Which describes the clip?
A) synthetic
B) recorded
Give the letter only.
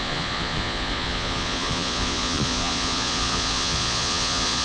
A